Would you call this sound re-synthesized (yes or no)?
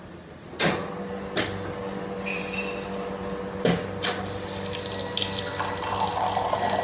no